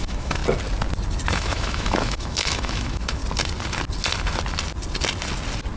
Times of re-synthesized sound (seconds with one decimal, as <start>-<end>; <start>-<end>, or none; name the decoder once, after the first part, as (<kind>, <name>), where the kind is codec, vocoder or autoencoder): 0.0-0.4 (autoencoder, DAC-VAE); 1.3-3.2